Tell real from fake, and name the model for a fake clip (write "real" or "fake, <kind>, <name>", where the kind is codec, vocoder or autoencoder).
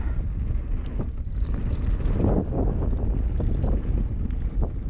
real